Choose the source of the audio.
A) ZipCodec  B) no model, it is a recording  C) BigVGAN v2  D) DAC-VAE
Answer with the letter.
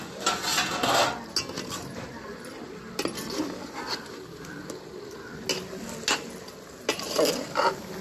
B